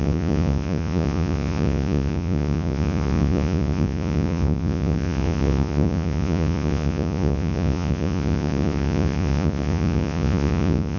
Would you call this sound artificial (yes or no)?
yes